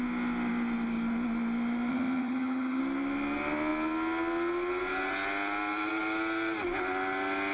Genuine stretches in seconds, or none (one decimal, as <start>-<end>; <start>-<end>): 0.0-1.9; 2.8-7.5